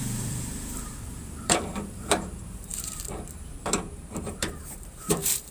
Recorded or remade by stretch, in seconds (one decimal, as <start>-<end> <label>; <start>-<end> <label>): 0.0-5.5 remade